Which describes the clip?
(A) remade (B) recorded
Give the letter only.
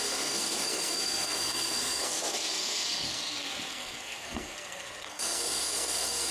A